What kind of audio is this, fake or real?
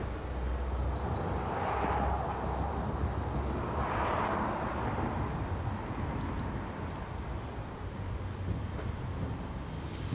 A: real